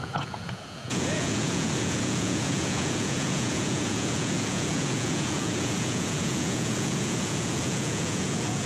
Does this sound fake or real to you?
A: fake